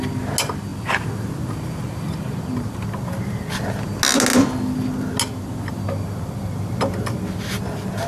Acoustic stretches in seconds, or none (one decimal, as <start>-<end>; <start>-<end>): 0.0-8.1